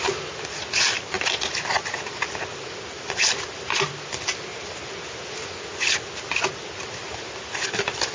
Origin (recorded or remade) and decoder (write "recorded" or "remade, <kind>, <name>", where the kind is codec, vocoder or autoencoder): recorded